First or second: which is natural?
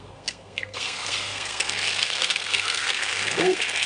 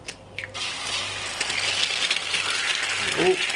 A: second